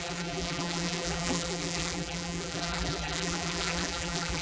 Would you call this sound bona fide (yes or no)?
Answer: no